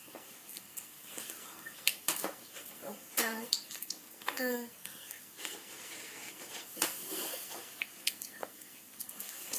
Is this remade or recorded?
remade